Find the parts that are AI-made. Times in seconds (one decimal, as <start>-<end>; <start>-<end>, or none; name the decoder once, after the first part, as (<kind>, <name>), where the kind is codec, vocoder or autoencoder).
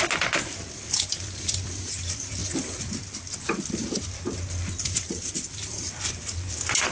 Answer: none